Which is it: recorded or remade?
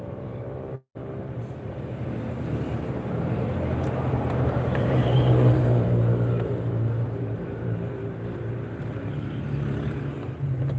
remade